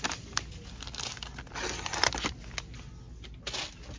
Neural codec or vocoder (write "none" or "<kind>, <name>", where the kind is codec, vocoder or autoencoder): none